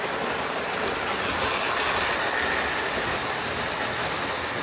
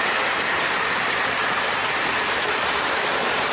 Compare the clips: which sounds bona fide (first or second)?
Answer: first